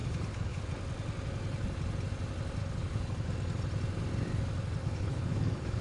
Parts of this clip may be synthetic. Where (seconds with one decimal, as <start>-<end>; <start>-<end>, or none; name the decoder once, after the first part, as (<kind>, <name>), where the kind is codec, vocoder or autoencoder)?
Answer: 0.0-0.6 (codec, HILCodec); 2.6-3.3; 4.8-5.8